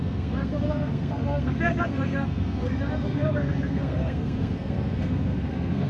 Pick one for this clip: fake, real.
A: fake